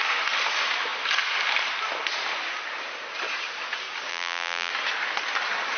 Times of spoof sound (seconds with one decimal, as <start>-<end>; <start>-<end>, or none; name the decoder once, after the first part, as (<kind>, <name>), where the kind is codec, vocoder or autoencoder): 4.1-4.7 (vocoder, BigVGAN v2)